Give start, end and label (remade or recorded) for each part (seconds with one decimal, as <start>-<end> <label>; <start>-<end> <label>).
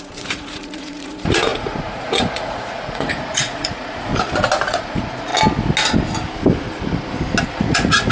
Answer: 0.0-4.1 remade; 4.1-4.7 recorded; 4.7-5.3 remade; 5.3-7.5 recorded; 7.5-8.1 remade